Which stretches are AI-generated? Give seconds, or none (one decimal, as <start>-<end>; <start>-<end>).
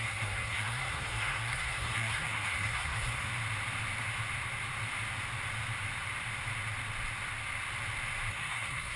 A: 0.0-3.3; 8.3-9.0